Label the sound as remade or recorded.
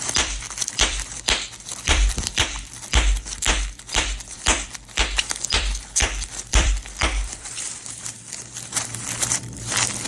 remade